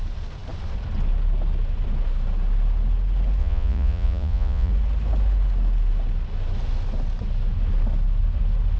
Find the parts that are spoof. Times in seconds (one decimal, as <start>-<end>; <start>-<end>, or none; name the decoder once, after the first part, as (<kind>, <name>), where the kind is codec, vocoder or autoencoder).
3.4-4.7 (vocoder, Vocos)